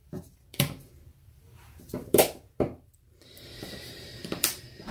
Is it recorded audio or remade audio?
remade